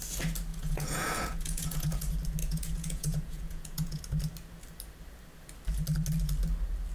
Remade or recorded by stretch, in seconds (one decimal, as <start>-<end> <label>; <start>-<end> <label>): 0.0-0.5 recorded; 0.5-2.0 remade; 2.0-2.4 recorded; 2.4-4.0 remade; 4.0-6.9 recorded

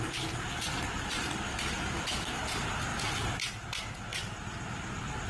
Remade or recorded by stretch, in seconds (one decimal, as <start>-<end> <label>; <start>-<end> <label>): 0.0-1.5 recorded; 1.5-2.4 remade; 2.4-5.3 recorded

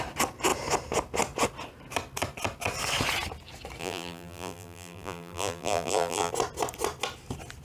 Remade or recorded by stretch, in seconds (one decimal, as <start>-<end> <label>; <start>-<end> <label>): 0.0-3.8 recorded; 3.8-6.3 remade; 6.3-7.6 recorded

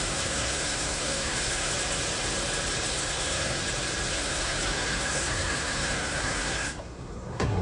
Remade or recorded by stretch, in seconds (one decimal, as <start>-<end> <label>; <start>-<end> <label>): 0.0-1.7 remade; 1.7-2.9 recorded; 2.9-3.6 remade; 3.6-4.1 recorded; 4.1-7.6 remade

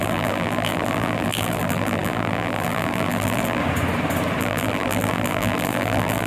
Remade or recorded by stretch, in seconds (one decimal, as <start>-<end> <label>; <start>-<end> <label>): 0.0-3.6 remade; 3.6-4.4 recorded; 4.4-6.3 remade

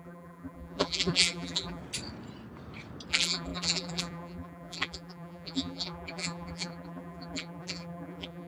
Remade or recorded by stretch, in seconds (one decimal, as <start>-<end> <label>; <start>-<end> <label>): 0.0-1.8 remade; 1.8-3.1 recorded; 3.1-8.5 remade

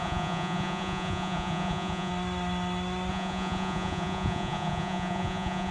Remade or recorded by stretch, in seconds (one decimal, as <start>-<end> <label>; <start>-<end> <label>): 0.0-2.1 remade; 2.1-3.1 recorded; 3.1-5.7 remade

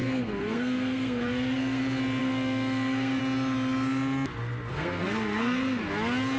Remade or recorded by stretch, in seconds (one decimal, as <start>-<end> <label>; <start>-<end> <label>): 0.0-1.8 remade; 1.8-2.2 recorded; 2.2-3.2 remade; 3.2-4.7 recorded; 4.7-5.8 remade; 5.8-6.4 recorded